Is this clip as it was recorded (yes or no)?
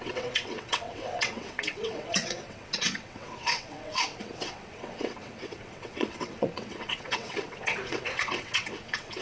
no